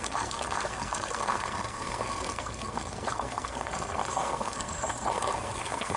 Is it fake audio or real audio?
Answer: fake